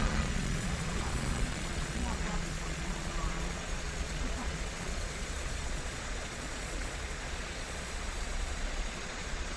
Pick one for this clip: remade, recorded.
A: remade